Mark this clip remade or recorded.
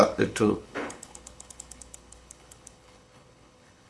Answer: remade